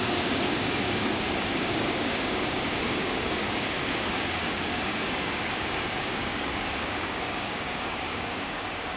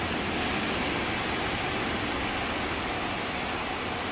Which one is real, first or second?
second